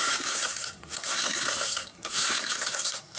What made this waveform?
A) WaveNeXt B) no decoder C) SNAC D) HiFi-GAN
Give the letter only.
C